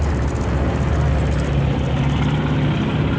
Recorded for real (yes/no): yes